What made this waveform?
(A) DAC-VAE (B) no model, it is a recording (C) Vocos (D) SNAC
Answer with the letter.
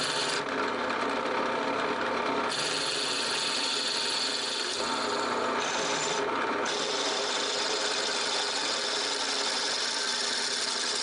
B